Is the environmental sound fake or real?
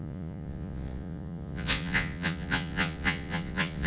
fake